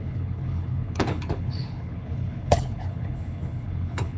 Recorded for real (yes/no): no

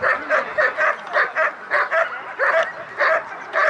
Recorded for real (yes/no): yes